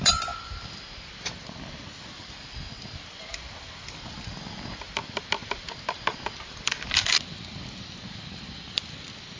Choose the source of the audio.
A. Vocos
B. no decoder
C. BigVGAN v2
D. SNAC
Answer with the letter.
C